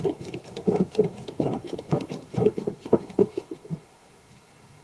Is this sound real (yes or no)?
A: no